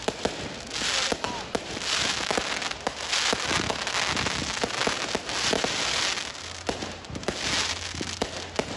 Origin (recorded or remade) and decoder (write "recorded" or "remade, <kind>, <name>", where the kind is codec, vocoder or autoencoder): recorded